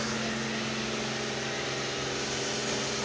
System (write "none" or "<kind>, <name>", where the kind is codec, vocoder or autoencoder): none